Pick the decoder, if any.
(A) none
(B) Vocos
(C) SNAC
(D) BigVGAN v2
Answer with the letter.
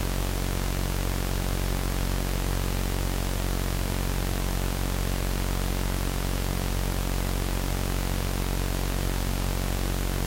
A